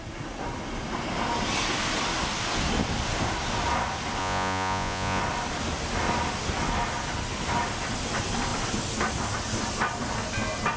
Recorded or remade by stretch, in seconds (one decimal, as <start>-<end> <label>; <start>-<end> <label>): 0.0-4.2 recorded; 4.2-5.2 remade; 5.2-10.8 recorded